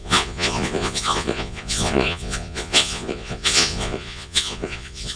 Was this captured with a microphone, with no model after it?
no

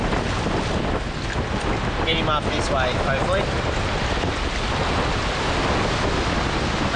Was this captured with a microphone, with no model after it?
yes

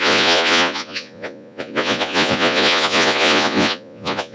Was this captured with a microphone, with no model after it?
no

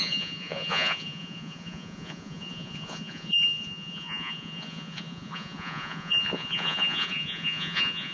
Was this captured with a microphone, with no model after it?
no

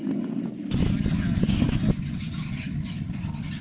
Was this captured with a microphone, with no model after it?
yes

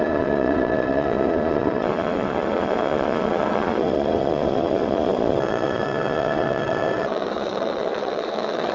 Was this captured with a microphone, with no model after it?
no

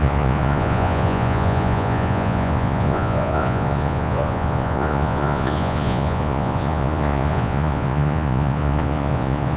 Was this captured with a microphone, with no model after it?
no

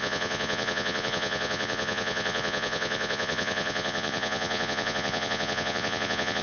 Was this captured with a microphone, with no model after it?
no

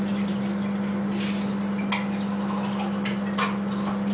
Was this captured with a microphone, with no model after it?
yes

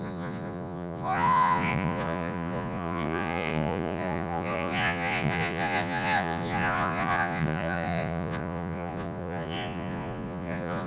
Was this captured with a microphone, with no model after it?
no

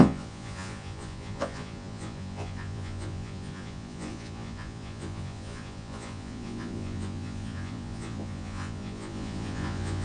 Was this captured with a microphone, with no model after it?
no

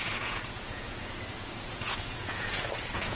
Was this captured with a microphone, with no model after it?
no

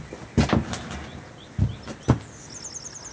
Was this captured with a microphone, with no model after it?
yes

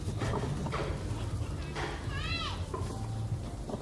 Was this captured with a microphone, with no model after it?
yes